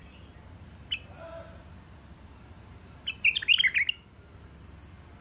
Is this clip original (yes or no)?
yes